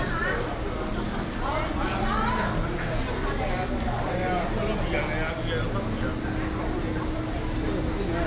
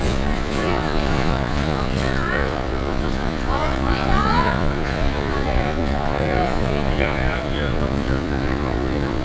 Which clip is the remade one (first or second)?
second